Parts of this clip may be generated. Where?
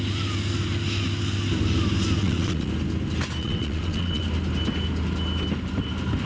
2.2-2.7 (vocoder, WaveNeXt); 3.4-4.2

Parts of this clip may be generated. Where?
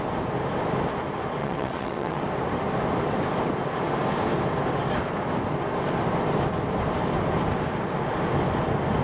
1.4-2.2 (vocoder, WaveNeXt)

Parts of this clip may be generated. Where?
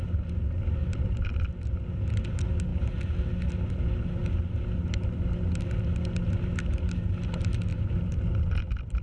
none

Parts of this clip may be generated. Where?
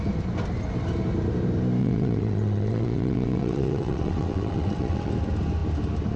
1.8-5.1 (vocoder, WaveNeXt)